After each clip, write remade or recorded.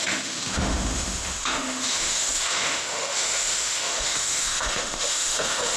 remade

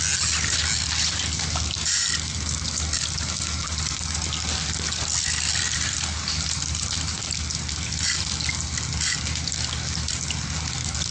recorded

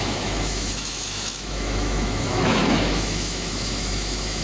remade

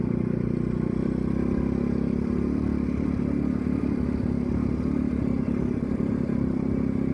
recorded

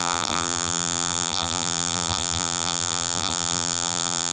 remade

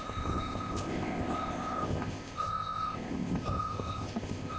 remade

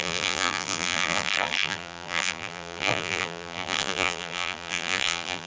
remade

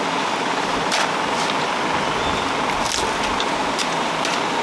recorded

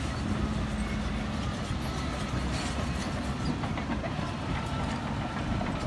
recorded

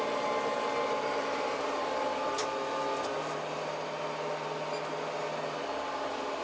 recorded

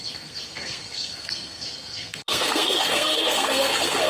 remade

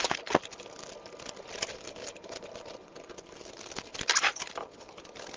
recorded